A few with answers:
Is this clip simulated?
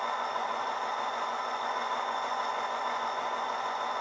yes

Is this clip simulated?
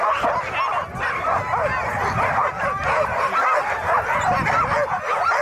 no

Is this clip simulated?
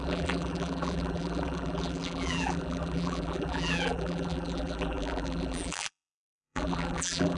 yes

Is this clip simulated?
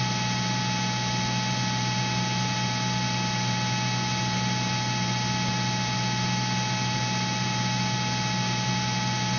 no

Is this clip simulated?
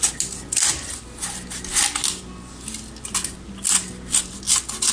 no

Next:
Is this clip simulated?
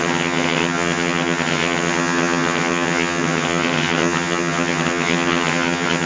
yes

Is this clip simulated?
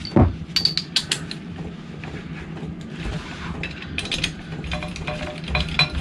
no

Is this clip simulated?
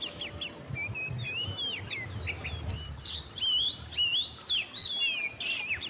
no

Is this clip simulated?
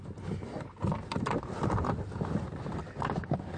no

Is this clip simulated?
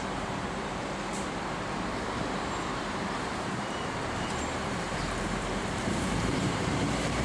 yes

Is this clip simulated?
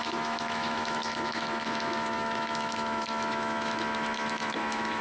yes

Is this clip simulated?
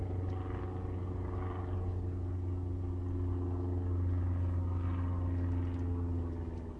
no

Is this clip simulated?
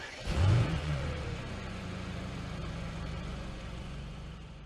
yes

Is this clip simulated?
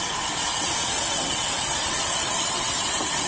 yes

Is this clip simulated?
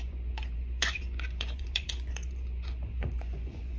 yes